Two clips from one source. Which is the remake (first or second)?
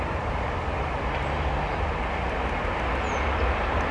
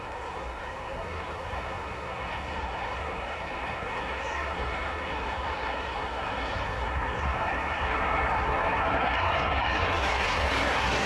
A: second